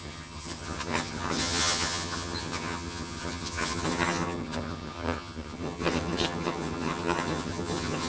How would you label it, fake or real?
fake